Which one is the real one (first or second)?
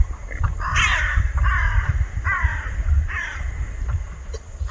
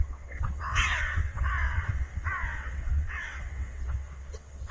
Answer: first